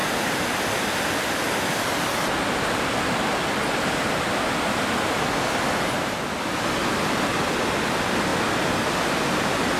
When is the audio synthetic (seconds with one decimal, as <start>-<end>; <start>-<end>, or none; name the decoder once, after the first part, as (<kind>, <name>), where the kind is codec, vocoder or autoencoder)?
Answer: none